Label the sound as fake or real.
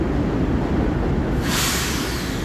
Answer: real